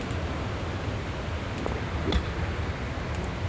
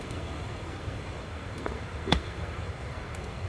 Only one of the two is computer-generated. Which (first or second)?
second